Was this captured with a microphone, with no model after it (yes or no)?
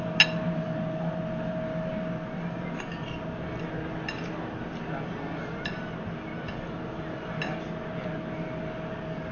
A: yes